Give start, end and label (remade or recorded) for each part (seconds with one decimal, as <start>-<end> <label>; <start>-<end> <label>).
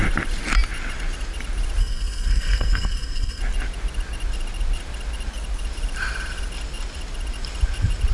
0.0-1.8 recorded; 1.8-3.4 remade; 3.4-8.1 recorded